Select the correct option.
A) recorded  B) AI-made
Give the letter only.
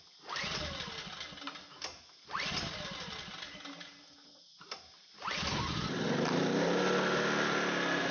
A